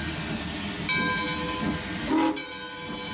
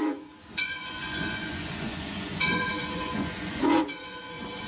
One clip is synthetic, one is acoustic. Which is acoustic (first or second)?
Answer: first